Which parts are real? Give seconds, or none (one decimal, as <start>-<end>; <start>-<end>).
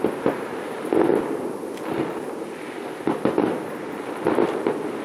0.0-1.1; 4.1-5.0